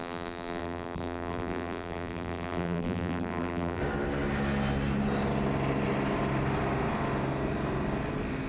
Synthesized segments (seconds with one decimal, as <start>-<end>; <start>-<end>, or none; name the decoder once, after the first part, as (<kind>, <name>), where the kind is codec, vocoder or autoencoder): 0.0-3.8 (vocoder, BigVGAN v2)